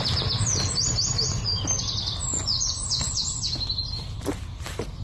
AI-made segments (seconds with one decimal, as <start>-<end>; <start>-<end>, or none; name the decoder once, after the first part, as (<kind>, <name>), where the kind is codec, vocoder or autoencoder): 2.3-3.5 (vocoder, Vocos)